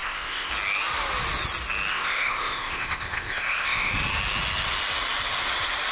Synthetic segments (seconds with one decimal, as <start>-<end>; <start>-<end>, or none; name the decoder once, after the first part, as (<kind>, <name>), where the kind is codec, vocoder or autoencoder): 0.0-0.5 (codec, ZipCodec); 1.9-3.9